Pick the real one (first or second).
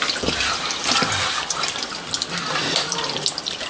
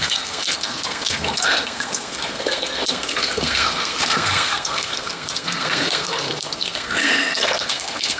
first